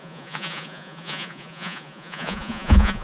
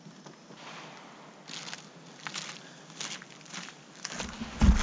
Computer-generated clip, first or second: first